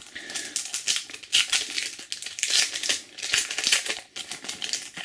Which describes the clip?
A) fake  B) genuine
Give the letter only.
B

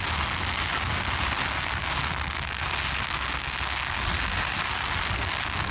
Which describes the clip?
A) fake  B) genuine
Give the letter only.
B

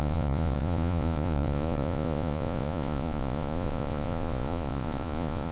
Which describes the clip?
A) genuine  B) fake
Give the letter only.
B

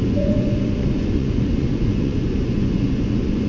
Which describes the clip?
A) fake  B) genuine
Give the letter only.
A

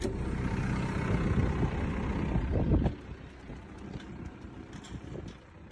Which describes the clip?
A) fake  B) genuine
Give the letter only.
B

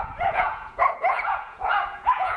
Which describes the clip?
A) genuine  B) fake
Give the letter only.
B